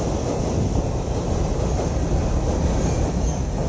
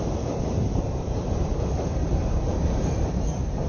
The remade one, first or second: second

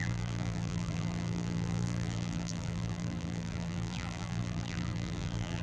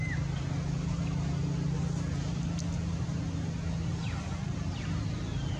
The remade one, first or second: first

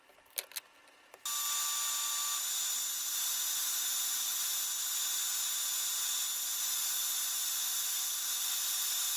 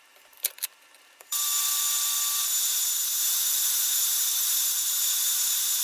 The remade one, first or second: second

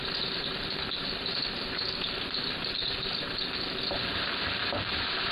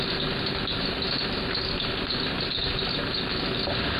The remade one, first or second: first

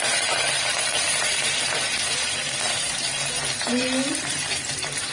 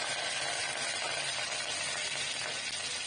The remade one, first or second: first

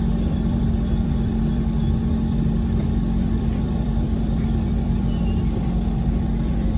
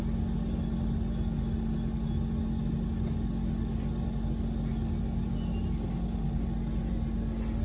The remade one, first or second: first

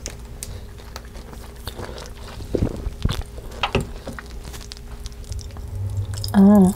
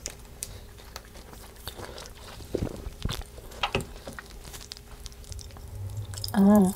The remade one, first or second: second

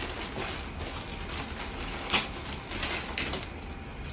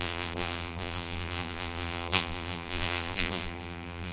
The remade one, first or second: second